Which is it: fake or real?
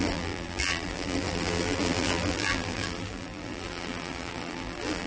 fake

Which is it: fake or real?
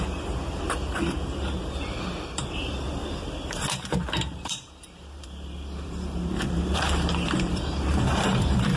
fake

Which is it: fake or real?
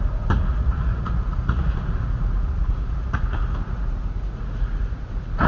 fake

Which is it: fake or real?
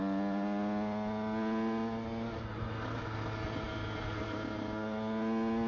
real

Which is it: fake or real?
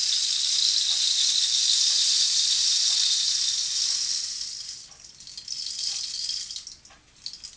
real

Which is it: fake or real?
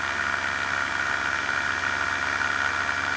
real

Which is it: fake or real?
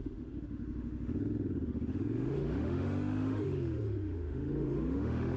fake